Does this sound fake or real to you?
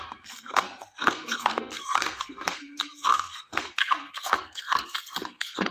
fake